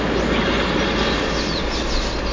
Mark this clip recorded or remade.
recorded